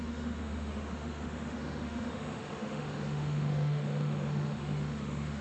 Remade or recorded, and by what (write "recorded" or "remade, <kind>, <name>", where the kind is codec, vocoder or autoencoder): remade, autoencoder, DAC-VAE